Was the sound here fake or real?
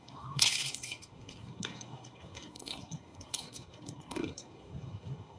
fake